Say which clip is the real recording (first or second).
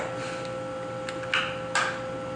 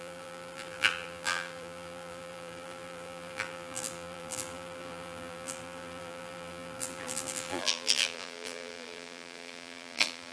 first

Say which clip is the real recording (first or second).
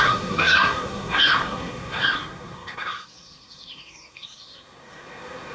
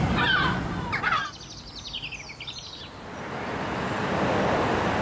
second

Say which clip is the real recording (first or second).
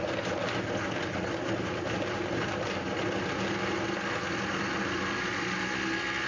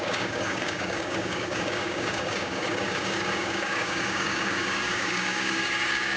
first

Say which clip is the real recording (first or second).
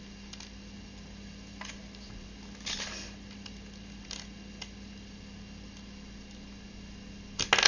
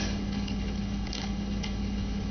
first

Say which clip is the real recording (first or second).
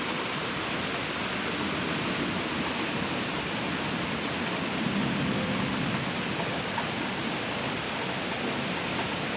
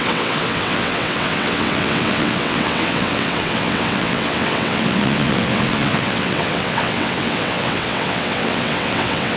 first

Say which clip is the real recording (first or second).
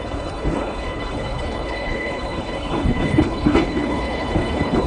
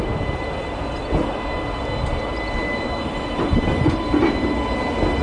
second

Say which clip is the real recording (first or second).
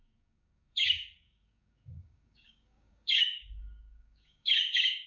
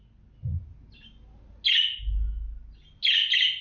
second